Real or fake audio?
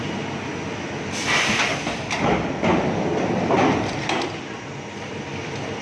real